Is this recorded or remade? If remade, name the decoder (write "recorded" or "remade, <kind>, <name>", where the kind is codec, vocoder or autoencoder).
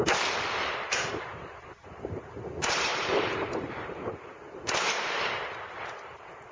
remade, vocoder, BigVGAN v2